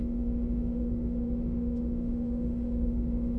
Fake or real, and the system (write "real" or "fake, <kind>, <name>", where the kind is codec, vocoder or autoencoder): fake, autoencoder, DAC-VAE